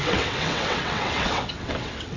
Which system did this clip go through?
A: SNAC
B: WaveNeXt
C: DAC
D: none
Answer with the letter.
B